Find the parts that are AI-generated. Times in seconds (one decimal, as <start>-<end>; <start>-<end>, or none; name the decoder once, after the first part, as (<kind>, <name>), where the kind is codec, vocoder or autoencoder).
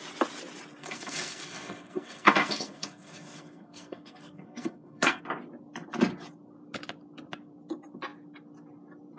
0.8-5.2 (codec, SNAC)